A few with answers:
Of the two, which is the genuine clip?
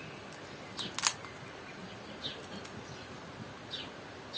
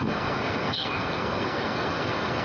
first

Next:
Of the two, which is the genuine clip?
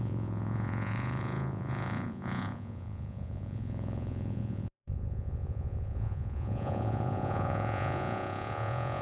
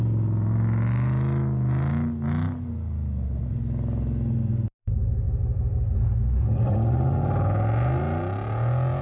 second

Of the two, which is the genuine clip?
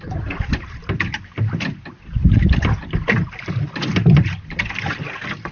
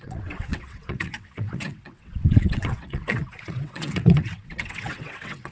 first